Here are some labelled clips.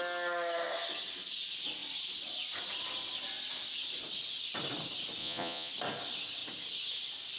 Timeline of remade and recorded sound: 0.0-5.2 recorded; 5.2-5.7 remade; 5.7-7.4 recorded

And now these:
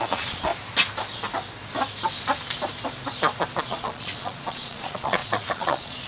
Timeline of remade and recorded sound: 0.0-0.5 remade; 0.5-3.6 recorded; 3.6-6.1 remade

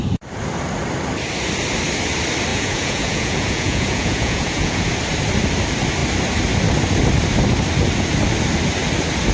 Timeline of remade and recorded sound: 0.0-2.5 recorded; 2.5-4.8 remade; 4.8-9.3 recorded